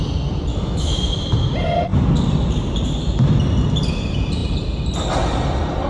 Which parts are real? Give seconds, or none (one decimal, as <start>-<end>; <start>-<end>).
0.0-0.5; 1.1-5.9